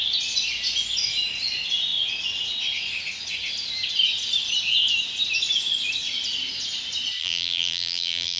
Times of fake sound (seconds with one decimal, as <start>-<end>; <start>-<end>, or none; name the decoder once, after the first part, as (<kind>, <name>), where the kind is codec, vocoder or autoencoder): 7.2-8.4 (vocoder, BigVGAN v2)